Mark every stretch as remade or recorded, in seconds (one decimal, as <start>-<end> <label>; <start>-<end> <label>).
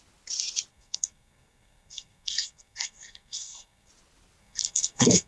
0.0-0.7 recorded; 0.7-3.9 remade; 3.9-4.4 recorded; 4.4-5.3 remade